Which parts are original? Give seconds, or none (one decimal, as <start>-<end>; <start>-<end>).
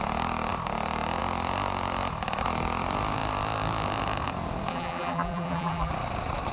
0.0-4.7; 5.9-6.5